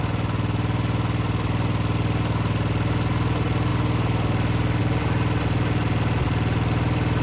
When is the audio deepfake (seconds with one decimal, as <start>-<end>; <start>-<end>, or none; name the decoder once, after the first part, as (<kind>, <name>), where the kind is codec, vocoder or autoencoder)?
none